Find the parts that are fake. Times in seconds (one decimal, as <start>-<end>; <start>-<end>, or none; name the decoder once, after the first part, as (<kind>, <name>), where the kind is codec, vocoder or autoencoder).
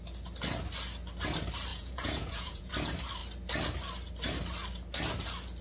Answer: 1.7-2.7 (vocoder, Vocos)